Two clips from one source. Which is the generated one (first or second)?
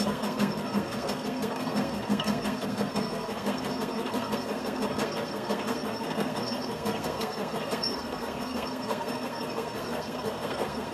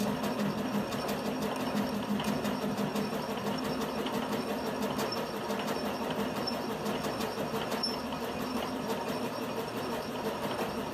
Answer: first